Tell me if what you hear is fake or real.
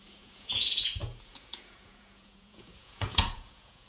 fake